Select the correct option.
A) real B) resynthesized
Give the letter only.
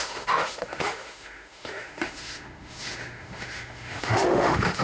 B